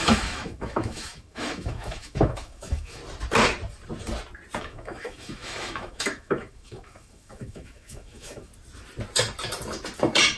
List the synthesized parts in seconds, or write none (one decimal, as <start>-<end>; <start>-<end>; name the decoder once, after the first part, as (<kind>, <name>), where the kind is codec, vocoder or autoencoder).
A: 0.0-3.0 (autoencoder, DAC-VAE); 4.6-8.5